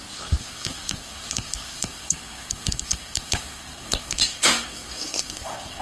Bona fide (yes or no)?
no